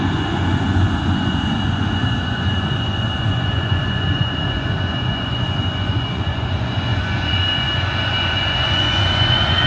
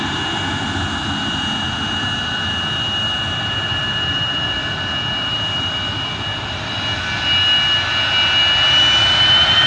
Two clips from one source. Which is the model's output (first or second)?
first